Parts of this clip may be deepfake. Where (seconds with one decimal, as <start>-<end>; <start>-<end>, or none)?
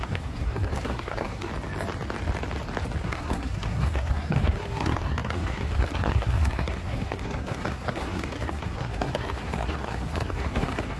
0.0-1.5; 3.0-11.0